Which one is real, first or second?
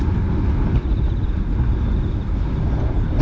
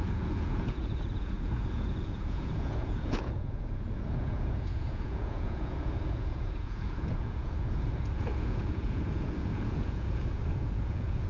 first